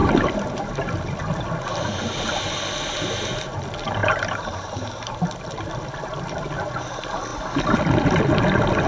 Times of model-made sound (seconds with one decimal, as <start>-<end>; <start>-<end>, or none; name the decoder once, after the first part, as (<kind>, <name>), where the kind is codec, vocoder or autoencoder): 0.0-0.7 (vocoder, BigVGAN v2); 4.0-5.2